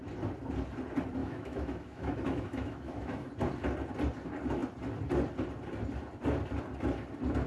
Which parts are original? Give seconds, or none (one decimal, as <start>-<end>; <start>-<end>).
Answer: 0.0-1.2; 3.3-7.5